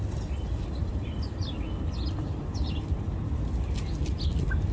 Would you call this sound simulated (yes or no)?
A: no